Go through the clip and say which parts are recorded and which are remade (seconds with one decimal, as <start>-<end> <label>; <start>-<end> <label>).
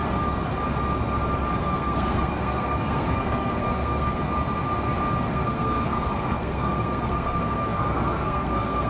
0.0-1.6 recorded; 1.6-4.2 remade; 4.2-5.3 recorded; 5.3-8.9 remade